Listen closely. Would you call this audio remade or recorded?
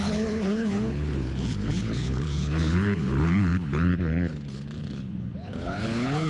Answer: remade